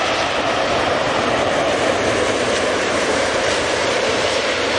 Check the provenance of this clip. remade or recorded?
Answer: remade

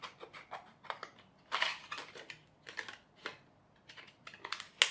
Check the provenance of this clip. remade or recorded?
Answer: recorded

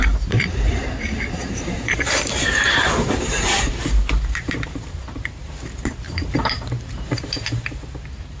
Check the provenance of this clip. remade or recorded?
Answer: remade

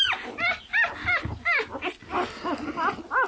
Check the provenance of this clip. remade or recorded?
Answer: recorded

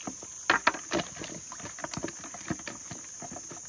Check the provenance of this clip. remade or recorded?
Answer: recorded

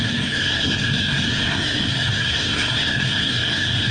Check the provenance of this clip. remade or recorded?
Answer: remade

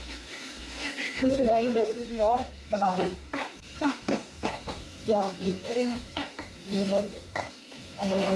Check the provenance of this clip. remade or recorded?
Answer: remade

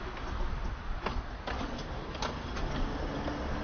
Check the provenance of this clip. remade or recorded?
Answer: recorded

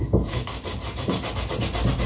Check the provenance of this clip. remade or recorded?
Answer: recorded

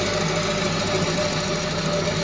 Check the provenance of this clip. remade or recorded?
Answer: recorded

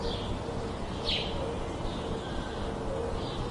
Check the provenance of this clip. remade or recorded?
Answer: recorded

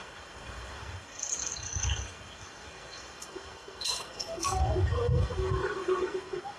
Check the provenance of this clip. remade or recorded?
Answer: remade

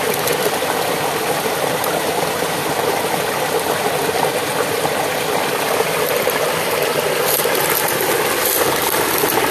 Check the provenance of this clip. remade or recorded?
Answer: recorded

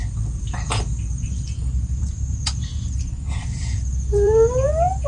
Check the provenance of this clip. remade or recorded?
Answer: remade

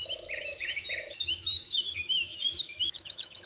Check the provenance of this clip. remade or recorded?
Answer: remade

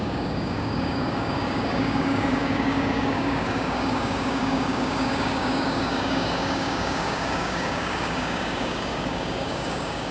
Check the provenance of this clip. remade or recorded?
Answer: remade